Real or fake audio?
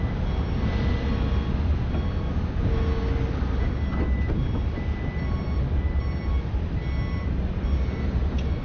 real